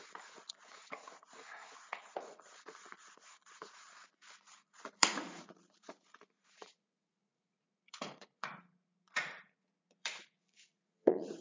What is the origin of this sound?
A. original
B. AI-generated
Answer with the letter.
B